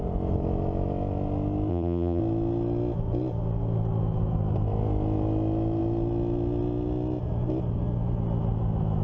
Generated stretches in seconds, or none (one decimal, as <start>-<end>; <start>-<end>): 1.7-2.2